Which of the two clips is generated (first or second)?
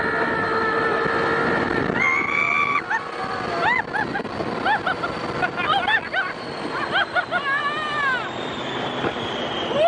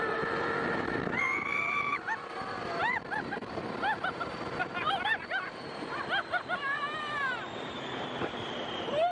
second